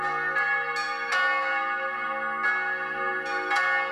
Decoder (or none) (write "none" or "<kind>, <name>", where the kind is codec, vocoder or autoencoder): none